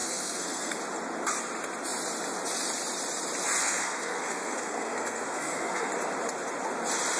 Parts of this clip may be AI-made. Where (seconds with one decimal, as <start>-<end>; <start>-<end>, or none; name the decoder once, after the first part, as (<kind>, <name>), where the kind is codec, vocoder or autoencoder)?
0.0-0.8 (codec, SNAC); 3.6-5.9